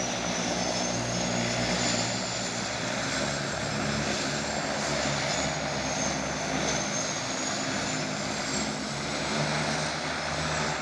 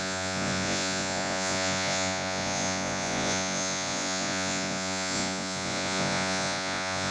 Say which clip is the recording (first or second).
first